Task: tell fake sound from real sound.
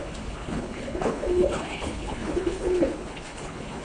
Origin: fake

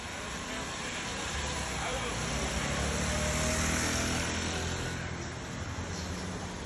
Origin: real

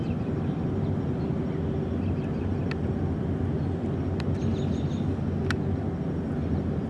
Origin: real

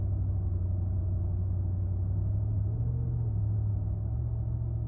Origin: real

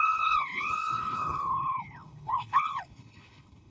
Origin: fake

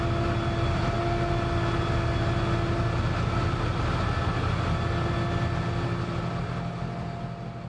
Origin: real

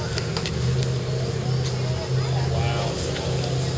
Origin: real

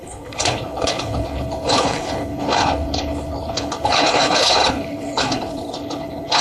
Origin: fake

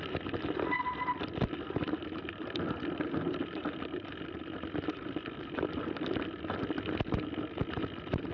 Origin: real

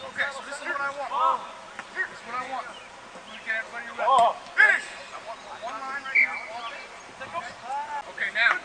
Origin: real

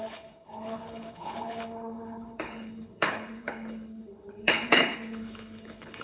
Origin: fake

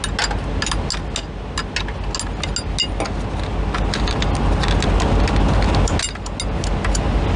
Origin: real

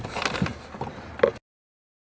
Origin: real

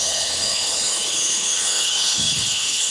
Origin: fake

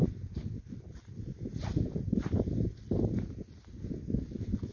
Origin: real